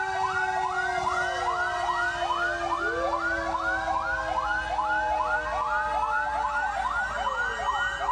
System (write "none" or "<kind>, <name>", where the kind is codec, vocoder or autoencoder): none